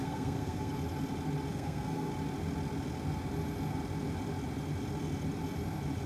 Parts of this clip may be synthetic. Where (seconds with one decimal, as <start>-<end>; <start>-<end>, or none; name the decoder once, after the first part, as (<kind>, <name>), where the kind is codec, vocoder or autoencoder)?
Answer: 0.0-0.7 (codec, SNAC); 1.5-2.1